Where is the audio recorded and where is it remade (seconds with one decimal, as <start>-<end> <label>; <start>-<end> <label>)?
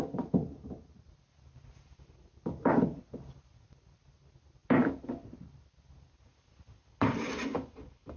0.0-8.2 recorded